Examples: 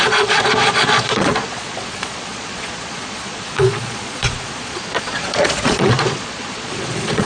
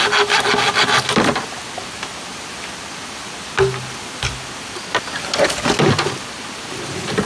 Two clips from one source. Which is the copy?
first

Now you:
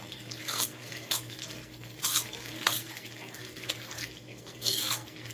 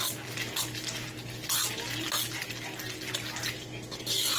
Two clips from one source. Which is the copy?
first